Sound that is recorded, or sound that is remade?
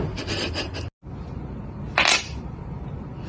recorded